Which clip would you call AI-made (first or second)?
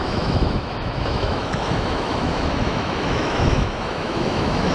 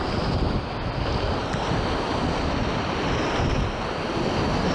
first